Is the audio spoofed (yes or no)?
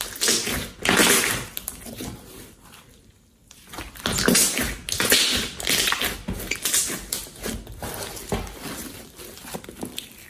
no